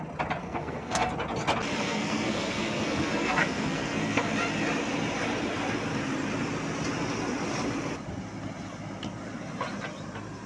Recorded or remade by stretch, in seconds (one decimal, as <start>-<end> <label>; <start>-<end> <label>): 0.0-0.4 recorded; 0.4-1.1 remade; 1.1-1.8 recorded; 1.8-4.3 remade; 4.3-10.5 recorded